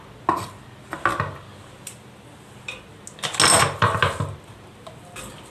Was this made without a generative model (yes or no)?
yes